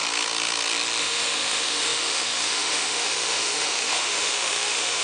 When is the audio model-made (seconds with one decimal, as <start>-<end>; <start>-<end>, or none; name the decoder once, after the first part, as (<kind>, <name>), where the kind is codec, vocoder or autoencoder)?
1.0-5.0 (autoencoder, DAC-VAE)